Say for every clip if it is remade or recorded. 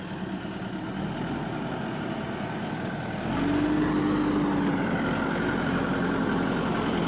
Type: recorded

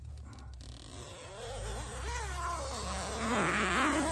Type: recorded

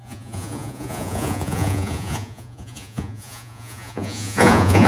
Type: remade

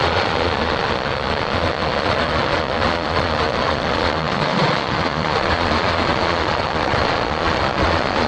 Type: remade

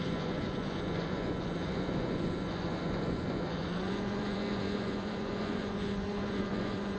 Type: remade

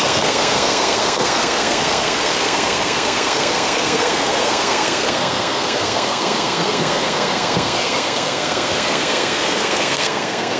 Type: remade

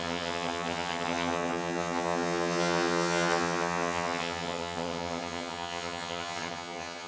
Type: remade